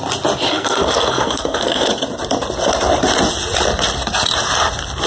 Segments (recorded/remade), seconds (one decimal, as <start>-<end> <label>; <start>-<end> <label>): 0.0-0.5 recorded; 0.5-1.9 remade; 1.9-5.1 recorded